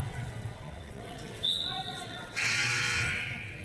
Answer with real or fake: fake